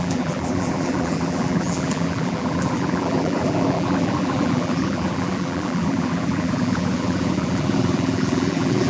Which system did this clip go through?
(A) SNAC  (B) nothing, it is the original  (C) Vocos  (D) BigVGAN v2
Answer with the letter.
D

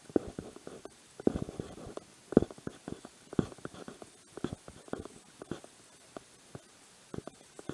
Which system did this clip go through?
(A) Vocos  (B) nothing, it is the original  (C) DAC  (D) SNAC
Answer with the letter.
B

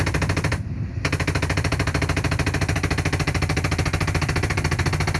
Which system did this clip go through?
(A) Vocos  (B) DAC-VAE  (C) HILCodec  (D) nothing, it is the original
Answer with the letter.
D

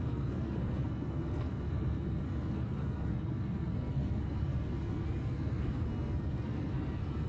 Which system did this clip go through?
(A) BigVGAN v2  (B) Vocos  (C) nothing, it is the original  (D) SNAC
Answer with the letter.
D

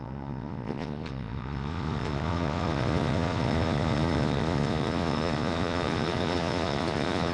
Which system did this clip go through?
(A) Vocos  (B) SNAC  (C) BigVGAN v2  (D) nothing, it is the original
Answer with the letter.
A